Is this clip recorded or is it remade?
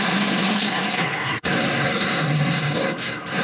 remade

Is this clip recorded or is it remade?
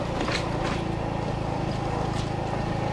recorded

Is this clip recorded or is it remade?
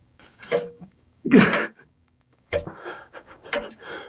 remade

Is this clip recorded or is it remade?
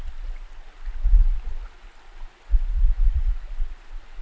recorded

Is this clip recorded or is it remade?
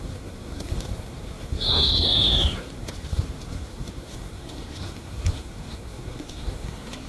remade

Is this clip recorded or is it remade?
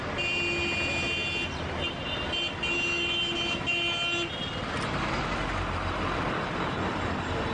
recorded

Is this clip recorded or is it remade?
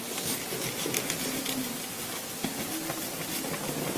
recorded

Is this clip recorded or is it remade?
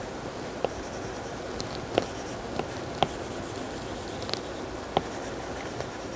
recorded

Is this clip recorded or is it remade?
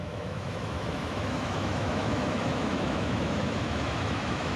remade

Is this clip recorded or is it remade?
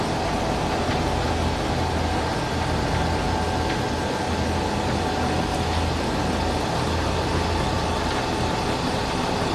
recorded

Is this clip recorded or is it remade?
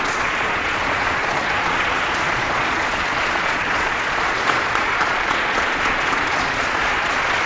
remade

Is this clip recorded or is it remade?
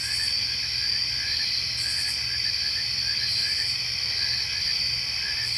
recorded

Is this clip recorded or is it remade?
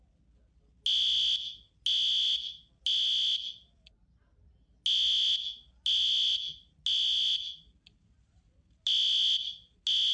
recorded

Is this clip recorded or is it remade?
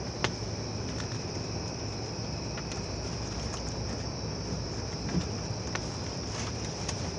recorded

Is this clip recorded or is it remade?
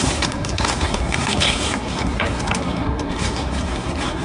remade